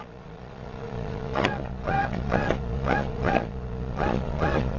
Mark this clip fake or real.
fake